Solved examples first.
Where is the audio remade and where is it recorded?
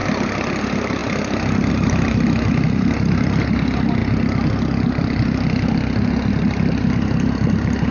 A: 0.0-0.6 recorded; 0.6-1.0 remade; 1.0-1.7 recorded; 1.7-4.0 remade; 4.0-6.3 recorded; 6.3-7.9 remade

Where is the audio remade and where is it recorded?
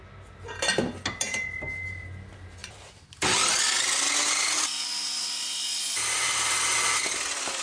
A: 0.0-2.6 recorded; 2.6-3.6 remade; 3.6-7.6 recorded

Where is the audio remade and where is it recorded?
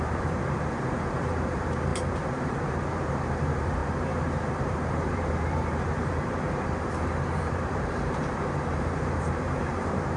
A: 0.0-10.2 remade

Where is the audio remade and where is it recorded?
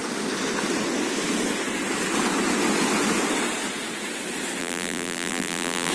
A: 0.0-4.6 recorded; 4.6-5.9 remade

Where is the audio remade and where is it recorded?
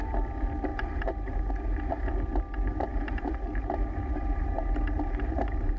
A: 0.0-0.7 recorded; 0.7-1.5 remade; 1.5-2.9 recorded; 2.9-5.8 remade